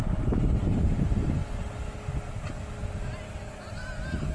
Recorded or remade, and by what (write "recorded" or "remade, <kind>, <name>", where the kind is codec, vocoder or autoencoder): recorded